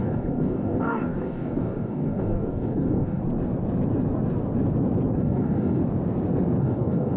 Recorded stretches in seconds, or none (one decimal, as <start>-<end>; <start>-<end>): 3.2-5.2; 5.8-6.6